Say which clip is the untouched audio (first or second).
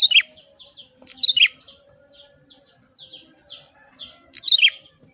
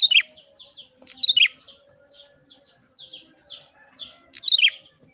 second